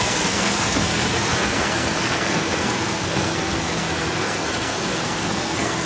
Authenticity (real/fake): fake